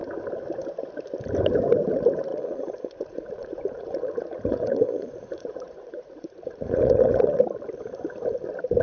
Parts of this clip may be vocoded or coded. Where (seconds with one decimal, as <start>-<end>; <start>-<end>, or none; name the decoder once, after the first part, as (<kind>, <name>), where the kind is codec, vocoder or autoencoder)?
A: 2.3-7.4 (vocoder, Vocos)